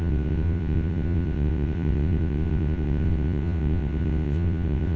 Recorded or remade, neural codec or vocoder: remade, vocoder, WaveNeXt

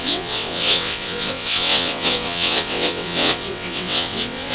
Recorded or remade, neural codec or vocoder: remade, vocoder, WaveNeXt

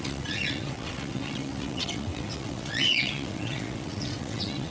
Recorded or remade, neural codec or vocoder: remade, vocoder, WaveNeXt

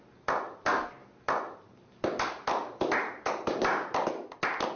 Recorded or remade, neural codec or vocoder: recorded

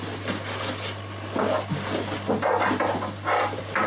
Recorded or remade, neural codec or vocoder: recorded